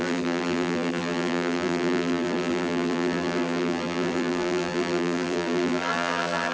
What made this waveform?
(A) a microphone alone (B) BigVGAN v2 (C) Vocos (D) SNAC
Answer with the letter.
B